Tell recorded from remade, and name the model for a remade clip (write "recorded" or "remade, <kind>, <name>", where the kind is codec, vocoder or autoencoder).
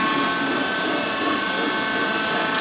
recorded